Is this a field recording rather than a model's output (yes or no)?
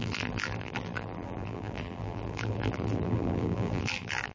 no